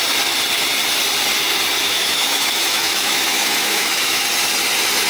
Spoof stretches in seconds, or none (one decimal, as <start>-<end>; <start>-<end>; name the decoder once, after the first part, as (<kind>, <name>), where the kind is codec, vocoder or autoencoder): 1.8-4.2 (autoencoder, DAC-VAE)